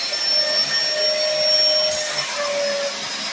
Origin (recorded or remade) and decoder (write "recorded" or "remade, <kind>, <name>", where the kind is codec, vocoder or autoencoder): recorded